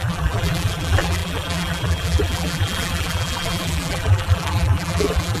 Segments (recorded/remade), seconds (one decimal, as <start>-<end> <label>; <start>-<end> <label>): 0.0-5.4 remade